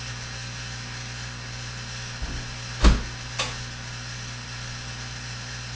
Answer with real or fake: real